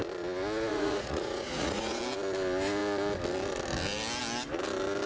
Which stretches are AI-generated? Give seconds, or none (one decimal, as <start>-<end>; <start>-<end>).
0.7-2.0